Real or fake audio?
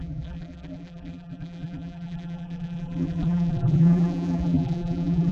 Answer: fake